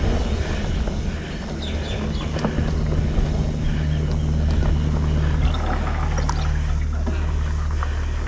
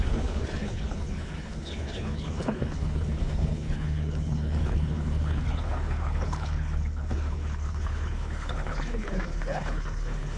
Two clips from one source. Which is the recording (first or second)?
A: first